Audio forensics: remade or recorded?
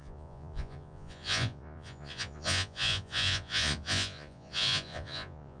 remade